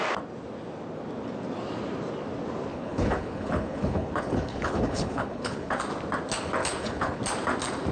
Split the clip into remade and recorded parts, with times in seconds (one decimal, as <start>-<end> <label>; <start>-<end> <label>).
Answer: 0.0-2.7 recorded; 2.7-5.8 remade; 5.8-6.6 recorded; 6.6-7.2 remade; 7.2-7.9 recorded